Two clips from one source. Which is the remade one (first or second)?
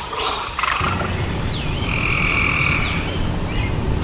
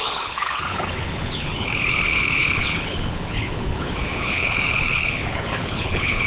second